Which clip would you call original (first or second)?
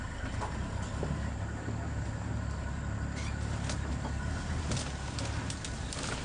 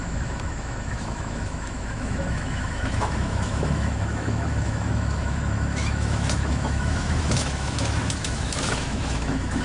first